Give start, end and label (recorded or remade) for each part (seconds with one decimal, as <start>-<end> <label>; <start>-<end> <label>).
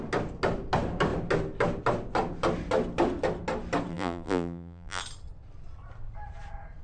0.0-3.9 recorded; 3.9-5.0 remade; 5.0-6.8 recorded